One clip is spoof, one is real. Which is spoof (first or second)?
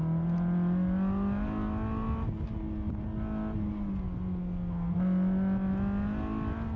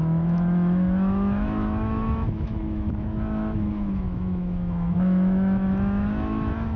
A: second